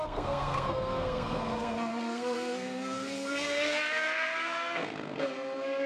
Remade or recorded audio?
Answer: remade